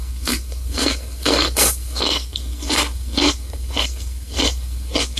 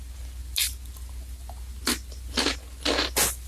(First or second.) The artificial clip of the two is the first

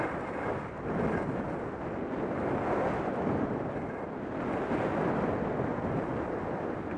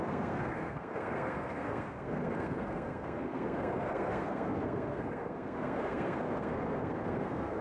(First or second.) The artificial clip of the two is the second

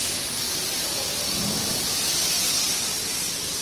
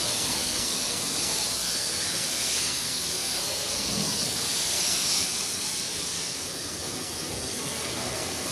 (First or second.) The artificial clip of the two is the second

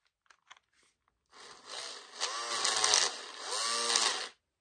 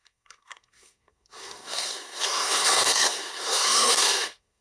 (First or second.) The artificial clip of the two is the second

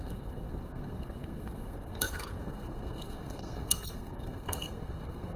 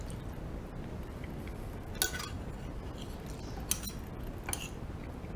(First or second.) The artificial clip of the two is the first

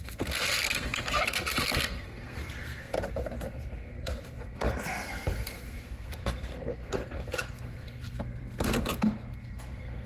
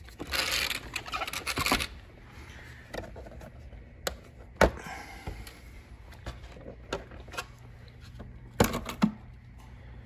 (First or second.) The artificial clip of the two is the first